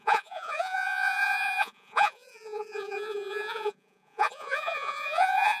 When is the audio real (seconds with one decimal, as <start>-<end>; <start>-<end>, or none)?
none